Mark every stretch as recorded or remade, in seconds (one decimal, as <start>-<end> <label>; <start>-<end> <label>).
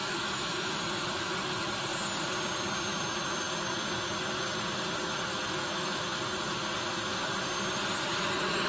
0.0-0.8 remade; 0.8-5.3 recorded; 5.3-6.0 remade; 6.0-8.7 recorded